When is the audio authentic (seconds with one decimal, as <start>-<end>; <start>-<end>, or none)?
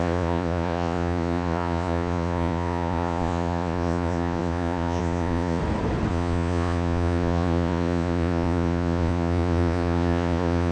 5.6-6.1